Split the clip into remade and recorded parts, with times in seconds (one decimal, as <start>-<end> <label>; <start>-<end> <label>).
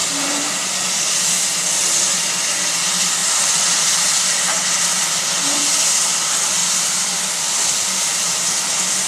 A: 0.0-3.2 recorded; 3.2-5.2 remade; 5.2-6.6 recorded; 6.6-8.0 remade; 8.0-9.1 recorded